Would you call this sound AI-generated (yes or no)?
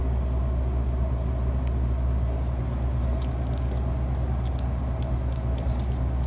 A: no